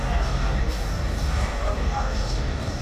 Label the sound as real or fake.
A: fake